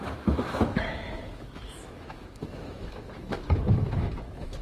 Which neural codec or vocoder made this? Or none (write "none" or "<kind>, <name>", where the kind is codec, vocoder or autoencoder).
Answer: autoencoder, DAC-VAE